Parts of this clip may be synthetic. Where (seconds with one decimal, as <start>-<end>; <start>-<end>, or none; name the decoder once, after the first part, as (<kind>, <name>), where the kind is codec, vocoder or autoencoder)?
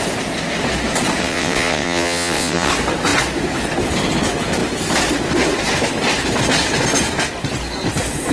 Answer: 1.2-2.7 (vocoder, WaveNeXt)